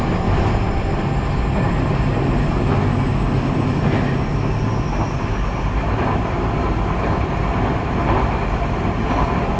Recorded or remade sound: recorded